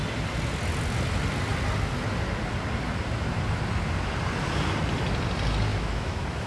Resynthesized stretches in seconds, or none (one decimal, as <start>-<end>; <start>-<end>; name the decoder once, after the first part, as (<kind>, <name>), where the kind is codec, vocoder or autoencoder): 5.7-6.5 (autoencoder, DAC-VAE)